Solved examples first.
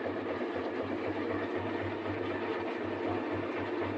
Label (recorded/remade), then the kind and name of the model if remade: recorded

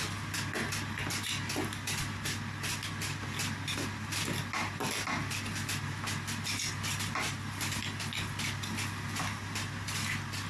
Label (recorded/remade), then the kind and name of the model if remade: recorded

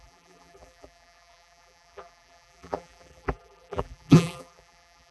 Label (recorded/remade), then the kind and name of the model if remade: remade, vocoder, BigVGAN v2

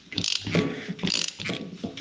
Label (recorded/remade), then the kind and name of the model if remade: recorded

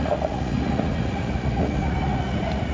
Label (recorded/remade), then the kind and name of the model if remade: remade, vocoder, Vocos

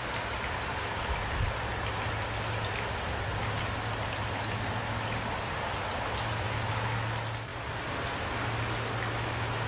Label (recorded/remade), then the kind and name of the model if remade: recorded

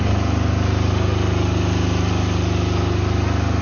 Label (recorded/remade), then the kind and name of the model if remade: recorded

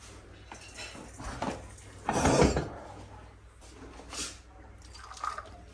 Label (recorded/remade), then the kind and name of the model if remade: recorded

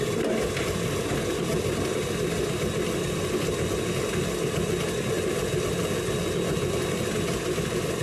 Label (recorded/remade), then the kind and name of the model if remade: recorded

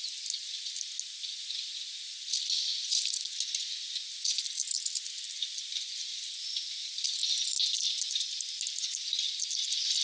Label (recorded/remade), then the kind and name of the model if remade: recorded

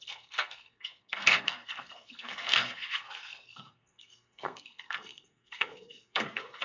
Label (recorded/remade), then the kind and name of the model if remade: remade, codec, SNAC